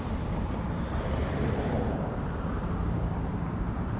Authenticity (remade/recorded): remade